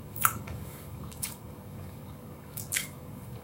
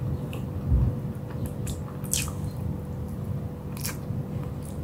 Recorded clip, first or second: second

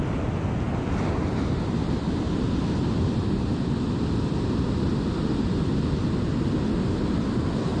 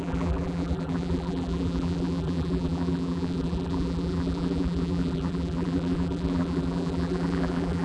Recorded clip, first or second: first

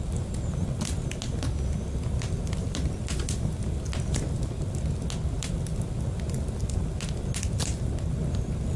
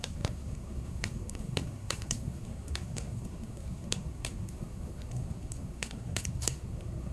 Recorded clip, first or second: first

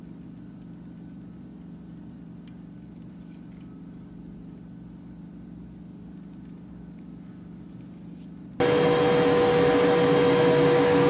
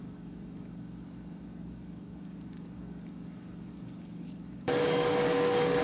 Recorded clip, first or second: first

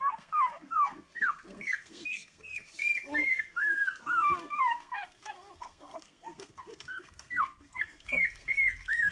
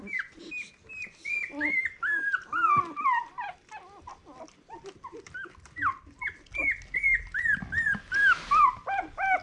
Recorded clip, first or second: second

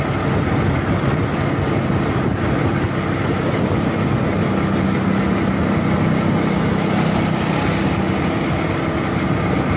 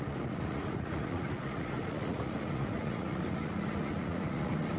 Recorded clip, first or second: first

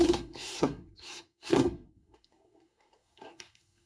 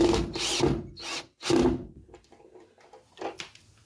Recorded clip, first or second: second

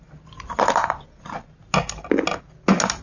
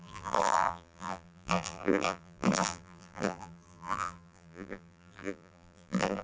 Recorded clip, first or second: first